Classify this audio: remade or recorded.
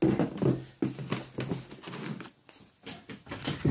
recorded